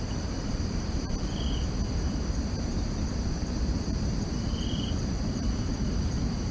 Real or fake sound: fake